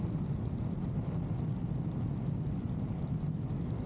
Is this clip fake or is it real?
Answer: real